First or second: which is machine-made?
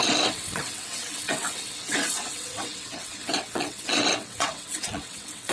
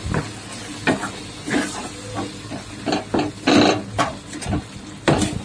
first